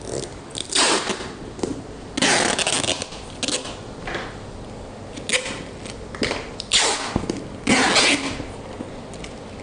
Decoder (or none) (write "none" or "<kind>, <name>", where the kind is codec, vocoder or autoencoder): none